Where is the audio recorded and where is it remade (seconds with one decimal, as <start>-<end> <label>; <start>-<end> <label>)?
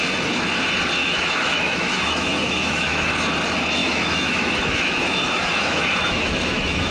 0.0-1.0 recorded; 1.0-3.1 remade; 3.1-3.8 recorded; 3.8-6.9 remade